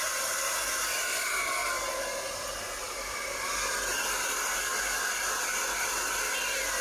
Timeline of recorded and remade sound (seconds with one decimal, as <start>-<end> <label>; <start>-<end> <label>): 0.0-6.8 recorded